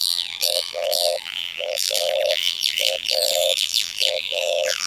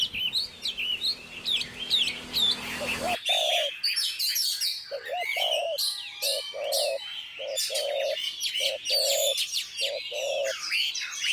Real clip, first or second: second